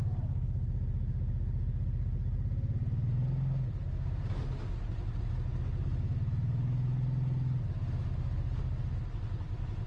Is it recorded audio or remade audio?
recorded